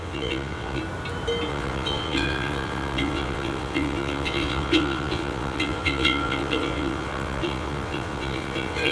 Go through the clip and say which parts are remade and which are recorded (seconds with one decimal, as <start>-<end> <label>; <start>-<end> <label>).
0.0-0.8 remade; 0.8-1.5 recorded; 1.5-8.9 remade

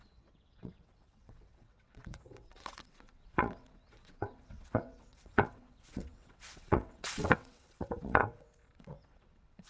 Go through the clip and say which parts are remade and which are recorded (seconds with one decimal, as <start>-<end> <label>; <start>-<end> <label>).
0.0-9.7 remade

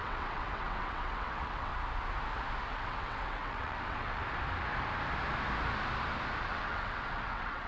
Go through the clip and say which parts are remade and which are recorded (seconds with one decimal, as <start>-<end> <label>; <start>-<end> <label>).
0.0-1.7 remade; 1.7-2.7 recorded; 2.7-4.2 remade; 4.2-6.4 recorded; 6.4-7.7 remade

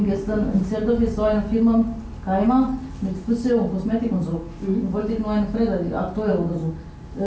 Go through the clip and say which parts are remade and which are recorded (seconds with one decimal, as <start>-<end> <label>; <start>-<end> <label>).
0.0-7.3 recorded

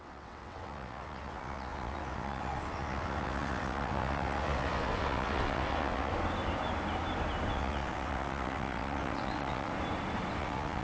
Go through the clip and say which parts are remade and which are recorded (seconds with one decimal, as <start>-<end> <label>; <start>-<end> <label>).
0.0-6.1 remade; 6.1-7.5 recorded; 7.5-9.7 remade; 9.7-10.4 recorded; 10.4-10.8 remade

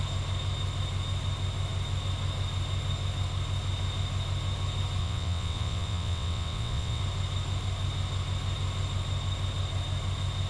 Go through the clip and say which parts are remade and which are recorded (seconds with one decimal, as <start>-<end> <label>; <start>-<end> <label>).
0.0-5.0 recorded; 5.0-7.0 remade; 7.0-10.5 recorded

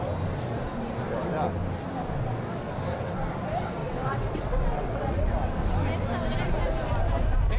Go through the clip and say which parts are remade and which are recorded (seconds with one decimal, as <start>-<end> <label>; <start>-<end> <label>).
0.0-3.8 recorded; 3.8-5.3 remade; 5.3-7.6 recorded

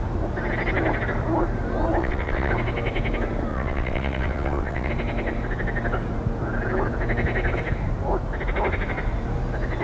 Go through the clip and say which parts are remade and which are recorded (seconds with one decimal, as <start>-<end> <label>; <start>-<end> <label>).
0.0-2.0 recorded; 2.0-2.5 remade; 2.5-3.5 recorded; 3.5-4.9 remade; 4.9-9.8 recorded